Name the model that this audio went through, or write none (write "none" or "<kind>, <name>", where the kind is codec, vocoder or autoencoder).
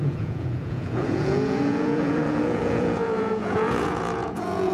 vocoder, Vocos